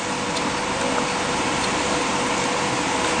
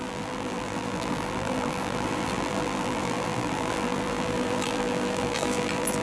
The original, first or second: first